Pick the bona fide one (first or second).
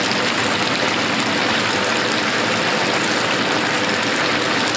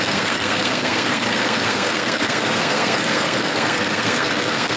first